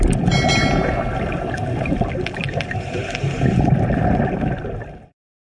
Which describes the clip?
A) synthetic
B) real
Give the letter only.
B